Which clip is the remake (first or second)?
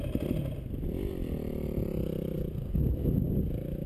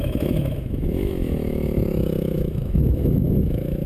second